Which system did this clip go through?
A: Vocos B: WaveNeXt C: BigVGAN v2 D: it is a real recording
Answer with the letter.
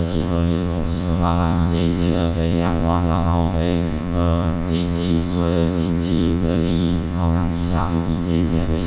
A